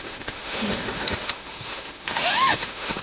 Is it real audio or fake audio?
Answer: fake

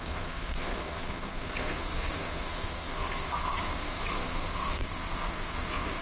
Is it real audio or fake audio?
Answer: fake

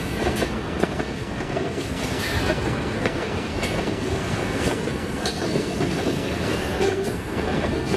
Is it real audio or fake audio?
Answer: fake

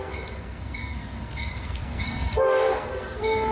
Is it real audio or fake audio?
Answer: fake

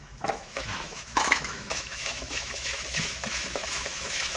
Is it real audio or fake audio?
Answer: fake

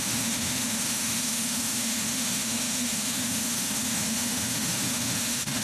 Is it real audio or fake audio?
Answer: fake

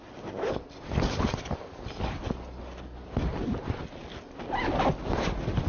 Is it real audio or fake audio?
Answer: real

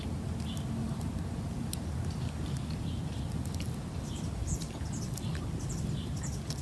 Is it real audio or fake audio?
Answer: real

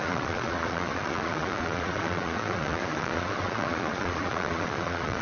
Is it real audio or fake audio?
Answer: fake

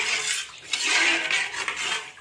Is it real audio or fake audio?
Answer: real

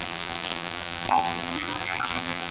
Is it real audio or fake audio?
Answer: fake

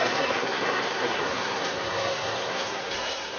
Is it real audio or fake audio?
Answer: fake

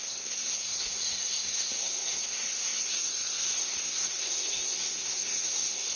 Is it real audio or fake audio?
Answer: fake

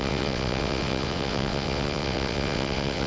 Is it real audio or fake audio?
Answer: fake